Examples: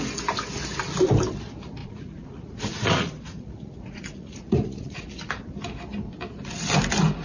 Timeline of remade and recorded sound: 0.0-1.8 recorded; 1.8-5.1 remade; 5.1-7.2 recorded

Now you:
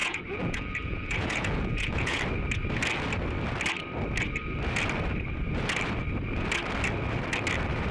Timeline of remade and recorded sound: 0.0-2.2 remade; 2.2-7.9 recorded

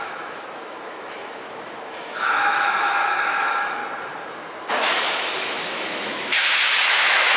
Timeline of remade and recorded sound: 0.0-3.8 remade; 3.8-4.3 recorded; 4.3-7.4 remade

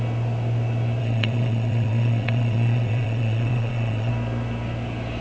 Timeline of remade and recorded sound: 0.0-1.0 recorded; 1.0-4.1 remade; 4.1-5.2 recorded

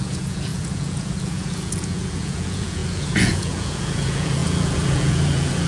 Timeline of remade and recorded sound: 0.0-5.7 remade

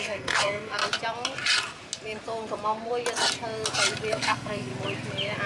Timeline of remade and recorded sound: 0.0-0.8 remade; 0.8-4.1 recorded; 4.1-4.7 remade; 4.7-5.5 recorded

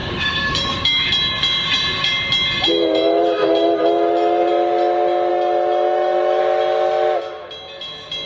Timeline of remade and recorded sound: 0.0-1.1 remade; 1.1-2.7 recorded; 2.7-4.5 remade; 4.5-5.3 recorded; 5.3-6.4 remade; 6.4-8.3 recorded